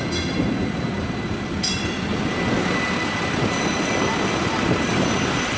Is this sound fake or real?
real